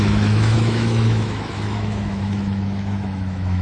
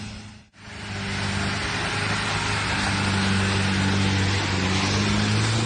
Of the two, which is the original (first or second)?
second